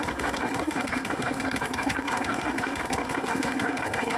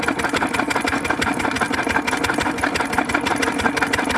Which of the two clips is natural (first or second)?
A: second